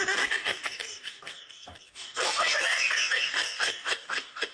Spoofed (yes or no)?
yes